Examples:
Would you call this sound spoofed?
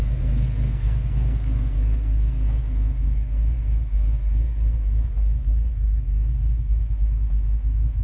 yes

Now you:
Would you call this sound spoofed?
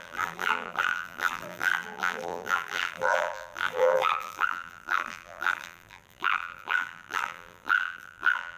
yes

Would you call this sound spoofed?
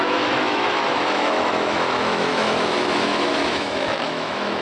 yes